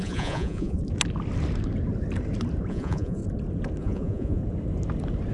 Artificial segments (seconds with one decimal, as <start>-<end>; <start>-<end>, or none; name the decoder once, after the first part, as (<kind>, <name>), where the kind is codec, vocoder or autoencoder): 0.0-0.8 (vocoder, Vocos); 2.7-3.2; 3.8-4.4